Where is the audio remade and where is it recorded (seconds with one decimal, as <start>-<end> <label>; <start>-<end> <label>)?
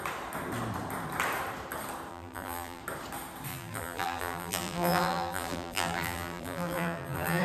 0.0-2.1 recorded; 2.1-2.8 remade; 2.8-3.5 recorded; 3.5-7.4 remade